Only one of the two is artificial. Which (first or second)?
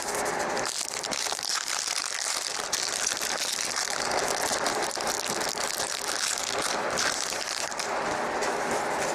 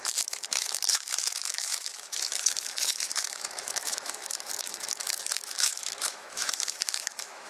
second